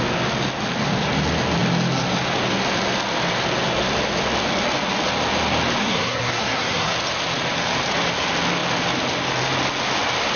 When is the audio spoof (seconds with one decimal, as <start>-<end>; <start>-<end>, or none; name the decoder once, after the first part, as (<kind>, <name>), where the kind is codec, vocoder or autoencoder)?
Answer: 5.8-6.9 (codec, SNAC)